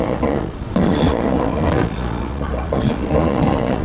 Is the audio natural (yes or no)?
no